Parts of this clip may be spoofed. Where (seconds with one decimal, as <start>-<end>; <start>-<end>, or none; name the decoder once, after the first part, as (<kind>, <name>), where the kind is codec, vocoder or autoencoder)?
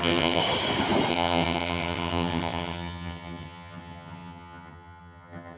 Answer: 0.0-0.4 (vocoder, HiFi-GAN); 1.1-5.6